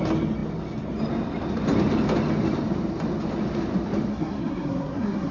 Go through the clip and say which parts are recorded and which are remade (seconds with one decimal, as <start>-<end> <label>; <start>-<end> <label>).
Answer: 0.0-4.1 recorded; 4.1-5.3 remade